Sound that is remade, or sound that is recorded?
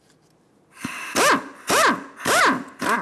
recorded